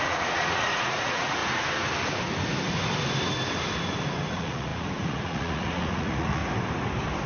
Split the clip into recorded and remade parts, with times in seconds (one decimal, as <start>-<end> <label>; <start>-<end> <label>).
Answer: 0.0-1.4 remade; 1.4-4.3 recorded; 4.3-6.4 remade; 6.4-7.3 recorded